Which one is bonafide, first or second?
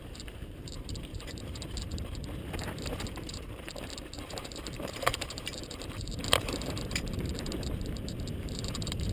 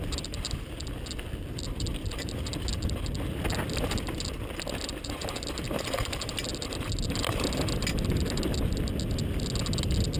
second